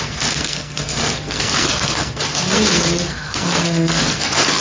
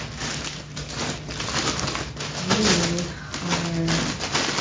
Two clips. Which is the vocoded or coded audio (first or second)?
first